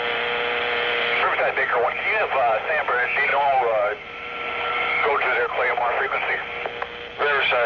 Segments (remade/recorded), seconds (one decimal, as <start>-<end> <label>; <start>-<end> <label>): 0.0-7.7 recorded